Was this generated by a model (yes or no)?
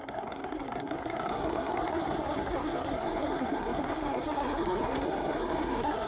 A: yes